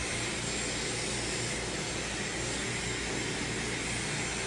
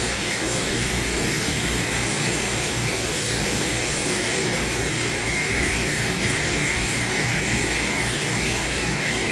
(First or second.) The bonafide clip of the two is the first